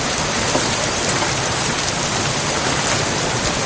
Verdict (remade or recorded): remade